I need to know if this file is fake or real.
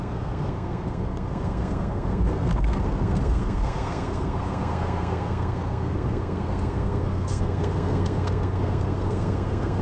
fake